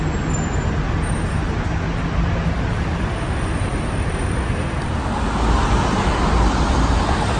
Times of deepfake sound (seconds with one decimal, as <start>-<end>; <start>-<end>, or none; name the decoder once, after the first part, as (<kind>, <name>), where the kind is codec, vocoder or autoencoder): none

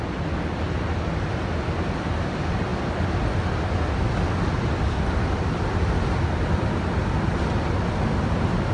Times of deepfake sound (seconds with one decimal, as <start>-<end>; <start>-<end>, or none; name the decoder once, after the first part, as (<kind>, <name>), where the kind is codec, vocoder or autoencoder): none